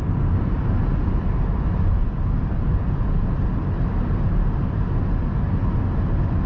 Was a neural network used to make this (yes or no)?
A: no